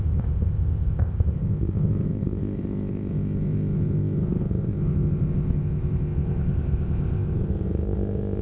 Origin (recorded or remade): remade